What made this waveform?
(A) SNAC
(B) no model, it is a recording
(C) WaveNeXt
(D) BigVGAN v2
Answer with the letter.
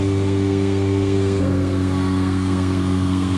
A